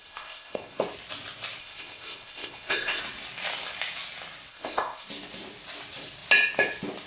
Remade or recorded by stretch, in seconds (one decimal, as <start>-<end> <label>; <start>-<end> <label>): 0.0-0.8 remade; 0.8-1.6 recorded; 1.6-3.0 remade; 3.0-4.5 recorded; 4.5-5.1 remade; 5.1-7.1 recorded